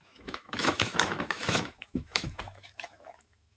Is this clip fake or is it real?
fake